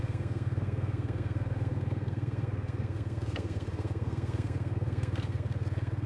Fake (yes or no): yes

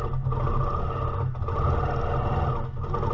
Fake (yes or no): no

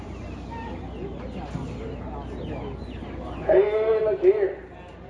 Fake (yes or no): no